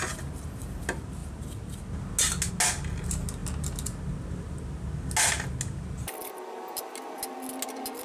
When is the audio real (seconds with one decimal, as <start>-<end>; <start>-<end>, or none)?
0.0-8.0